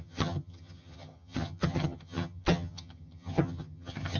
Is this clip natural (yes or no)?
no